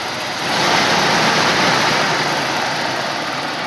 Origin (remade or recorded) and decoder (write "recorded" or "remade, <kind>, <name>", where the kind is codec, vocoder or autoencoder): recorded